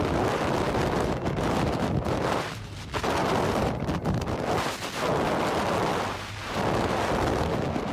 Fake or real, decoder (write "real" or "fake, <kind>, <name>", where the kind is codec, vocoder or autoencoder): real